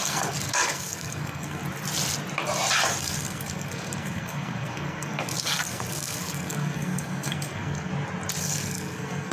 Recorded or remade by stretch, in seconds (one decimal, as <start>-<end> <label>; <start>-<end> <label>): 0.0-1.6 remade; 1.6-3.0 recorded; 3.0-7.9 remade; 7.9-8.4 recorded; 8.4-9.3 remade